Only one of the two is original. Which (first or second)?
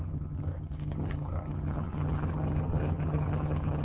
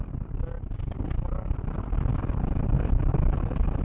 second